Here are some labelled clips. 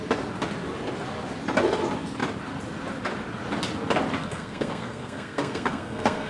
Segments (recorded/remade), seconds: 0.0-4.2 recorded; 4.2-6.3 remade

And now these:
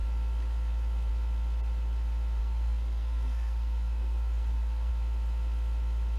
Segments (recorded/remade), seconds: 0.0-2.4 recorded; 2.4-4.9 remade; 4.9-6.2 recorded

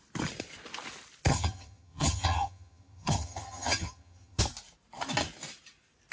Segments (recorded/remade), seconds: 0.0-1.3 recorded; 1.3-4.4 remade; 4.4-6.1 recorded

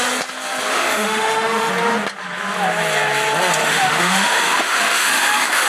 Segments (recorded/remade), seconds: 0.0-0.7 recorded; 0.7-1.7 remade; 1.7-3.6 recorded; 3.6-5.7 remade